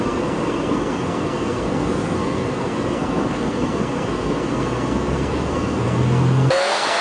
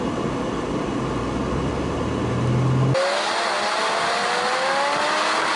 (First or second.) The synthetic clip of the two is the first